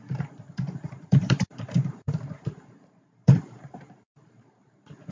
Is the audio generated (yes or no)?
yes